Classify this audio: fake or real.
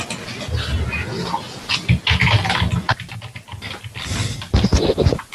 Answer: real